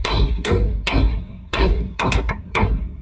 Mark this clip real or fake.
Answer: fake